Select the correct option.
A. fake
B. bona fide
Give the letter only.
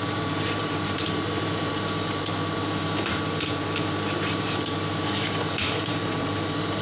A